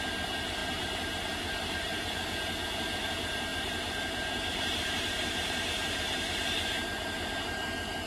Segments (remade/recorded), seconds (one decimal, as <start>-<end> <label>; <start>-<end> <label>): 0.0-0.6 recorded; 0.6-2.2 remade; 2.2-3.5 recorded; 3.5-7.4 remade; 7.4-8.1 recorded